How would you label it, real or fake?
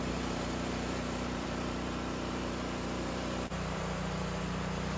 fake